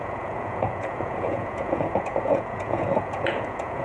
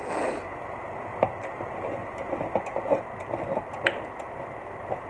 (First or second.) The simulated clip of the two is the first